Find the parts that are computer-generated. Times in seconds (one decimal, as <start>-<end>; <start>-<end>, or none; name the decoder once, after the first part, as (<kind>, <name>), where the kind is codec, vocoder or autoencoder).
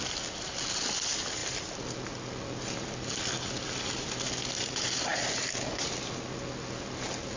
none